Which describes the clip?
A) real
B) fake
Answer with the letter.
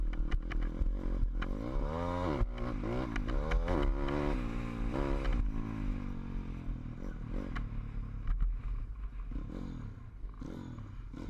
A